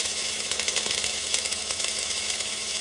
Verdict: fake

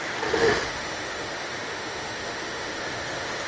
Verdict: fake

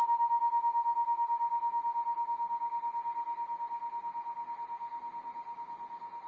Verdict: real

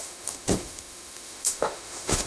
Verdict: fake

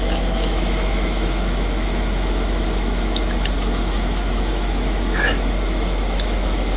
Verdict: fake